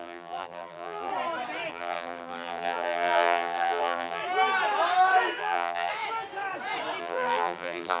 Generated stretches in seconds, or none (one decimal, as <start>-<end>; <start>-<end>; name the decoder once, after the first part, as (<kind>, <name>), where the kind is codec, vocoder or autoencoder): 0.0-1.1 (vocoder, BigVGAN v2); 1.7-4.2; 5.4-5.9; 7.0-8.0